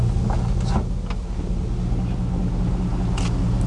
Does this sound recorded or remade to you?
recorded